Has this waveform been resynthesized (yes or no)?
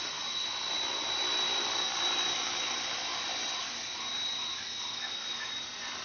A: no